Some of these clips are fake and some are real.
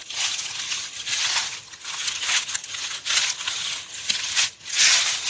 fake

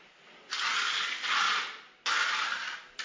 real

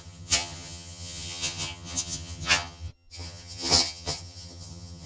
fake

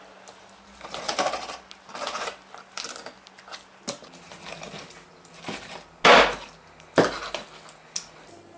real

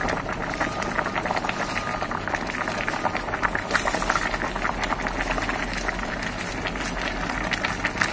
real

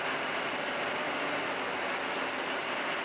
real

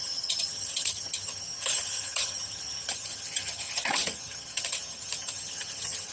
fake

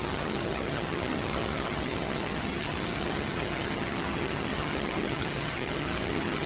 fake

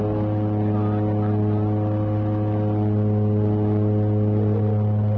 real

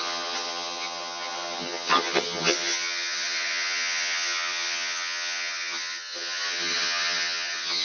fake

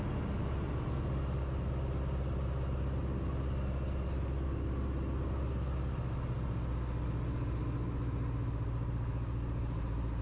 real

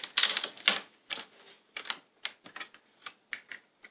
real